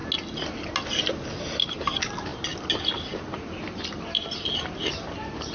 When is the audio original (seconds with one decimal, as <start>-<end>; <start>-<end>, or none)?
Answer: 0.0-1.4; 2.3-3.9